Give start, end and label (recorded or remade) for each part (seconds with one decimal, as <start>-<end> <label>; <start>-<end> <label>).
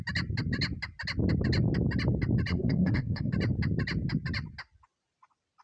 0.0-2.5 recorded; 2.5-3.3 remade; 3.3-5.6 recorded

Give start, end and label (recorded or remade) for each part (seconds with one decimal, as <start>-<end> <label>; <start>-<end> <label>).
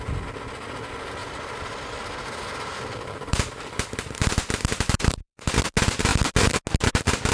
0.0-1.2 recorded; 1.2-5.6 remade; 5.6-7.3 recorded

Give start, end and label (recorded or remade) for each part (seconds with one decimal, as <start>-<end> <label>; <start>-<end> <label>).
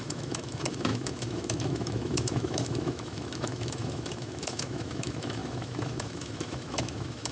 0.0-7.3 remade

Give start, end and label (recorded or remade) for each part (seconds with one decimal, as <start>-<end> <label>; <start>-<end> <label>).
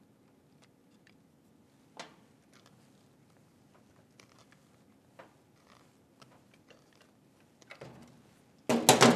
0.0-9.2 recorded